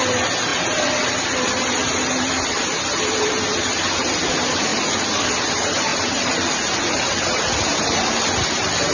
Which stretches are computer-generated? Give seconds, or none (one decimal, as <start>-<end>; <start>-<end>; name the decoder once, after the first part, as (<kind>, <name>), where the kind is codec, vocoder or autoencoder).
0.0-4.7 (vocoder, BigVGAN v2); 5.5-8.9